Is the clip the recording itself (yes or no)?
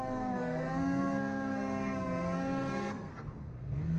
no